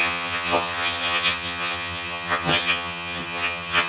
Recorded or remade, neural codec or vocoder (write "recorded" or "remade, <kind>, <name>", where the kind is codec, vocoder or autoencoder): remade, vocoder, HiFi-GAN